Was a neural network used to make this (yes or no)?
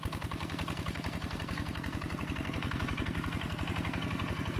yes